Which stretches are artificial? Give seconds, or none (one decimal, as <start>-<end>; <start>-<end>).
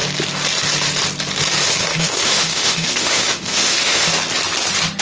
1.9-4.1